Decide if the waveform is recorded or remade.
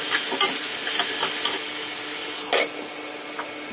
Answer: recorded